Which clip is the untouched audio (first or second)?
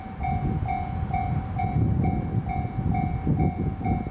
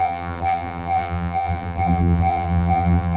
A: first